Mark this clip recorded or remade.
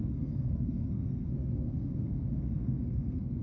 remade